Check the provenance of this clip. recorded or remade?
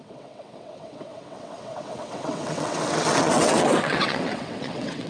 remade